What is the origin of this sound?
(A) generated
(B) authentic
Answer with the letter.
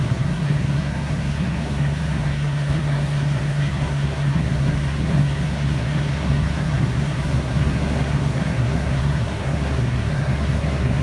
A